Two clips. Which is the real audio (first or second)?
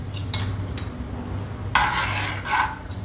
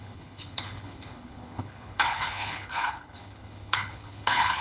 first